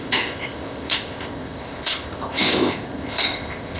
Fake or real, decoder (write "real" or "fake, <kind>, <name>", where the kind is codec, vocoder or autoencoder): fake, codec, ZipCodec